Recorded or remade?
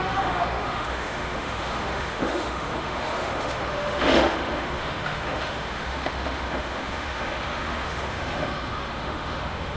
remade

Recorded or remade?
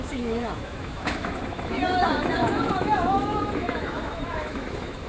remade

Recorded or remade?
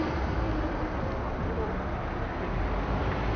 recorded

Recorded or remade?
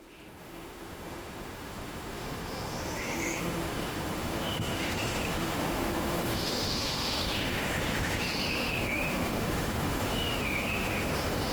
remade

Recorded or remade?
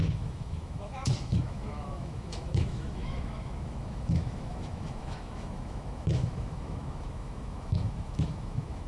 remade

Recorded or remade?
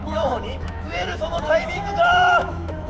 remade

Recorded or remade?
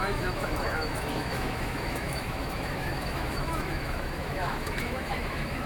remade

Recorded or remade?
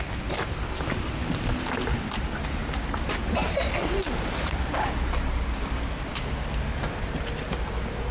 recorded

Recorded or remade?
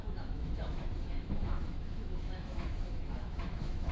remade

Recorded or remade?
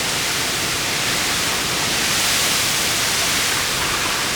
recorded